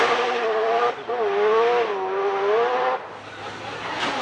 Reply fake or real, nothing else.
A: real